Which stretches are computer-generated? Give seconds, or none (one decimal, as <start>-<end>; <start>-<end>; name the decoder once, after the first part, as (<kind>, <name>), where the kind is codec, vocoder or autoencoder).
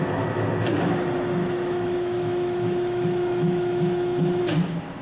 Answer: 1.4-4.4 (autoencoder, DAC-VAE)